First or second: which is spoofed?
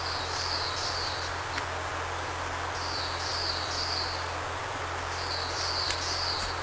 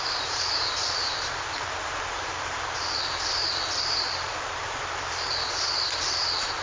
second